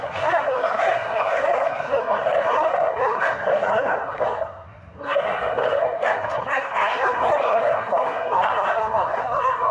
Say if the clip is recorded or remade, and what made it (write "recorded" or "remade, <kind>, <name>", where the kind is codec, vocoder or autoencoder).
remade, codec, SNAC